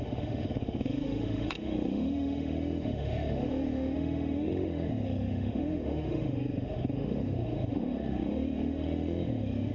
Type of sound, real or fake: fake